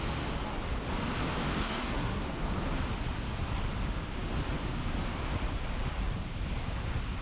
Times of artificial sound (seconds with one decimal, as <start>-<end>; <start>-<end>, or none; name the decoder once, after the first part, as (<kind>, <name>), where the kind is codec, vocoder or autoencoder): 1.6-2.2 (codec, SNAC)